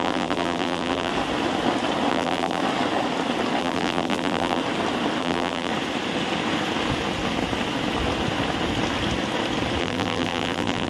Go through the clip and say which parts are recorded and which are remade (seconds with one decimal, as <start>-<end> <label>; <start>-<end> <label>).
0.0-1.1 remade; 1.1-2.1 recorded; 2.1-2.6 remade; 2.6-3.6 recorded; 3.6-4.6 remade; 4.6-5.2 recorded; 5.2-5.7 remade; 5.7-9.8 recorded; 9.8-10.9 remade